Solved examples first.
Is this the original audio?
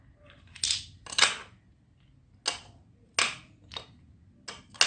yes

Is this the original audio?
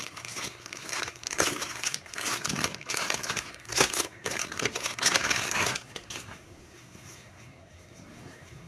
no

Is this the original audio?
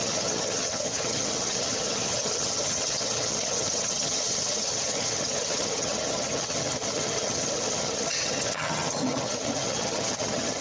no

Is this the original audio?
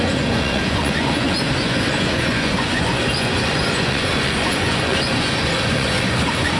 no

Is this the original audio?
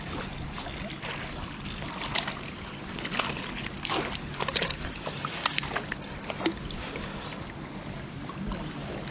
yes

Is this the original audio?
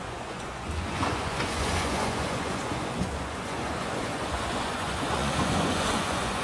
no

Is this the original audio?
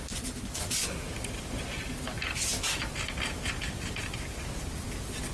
yes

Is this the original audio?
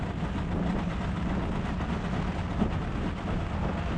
yes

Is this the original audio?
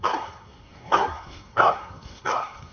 no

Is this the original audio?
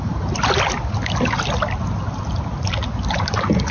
yes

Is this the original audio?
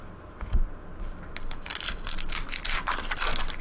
yes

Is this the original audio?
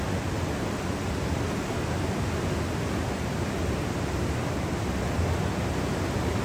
yes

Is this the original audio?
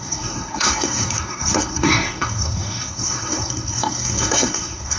no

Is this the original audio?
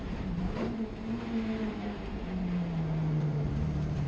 no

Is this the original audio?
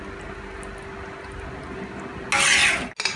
yes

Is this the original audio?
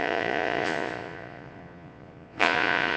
no